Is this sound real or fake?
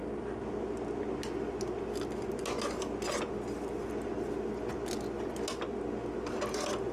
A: real